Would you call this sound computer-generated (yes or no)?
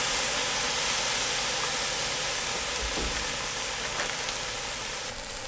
no